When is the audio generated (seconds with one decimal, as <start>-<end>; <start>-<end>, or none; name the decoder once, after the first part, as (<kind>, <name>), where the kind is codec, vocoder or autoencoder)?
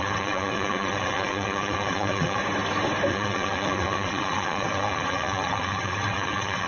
0.0-2.4 (vocoder, WaveNeXt); 3.1-6.7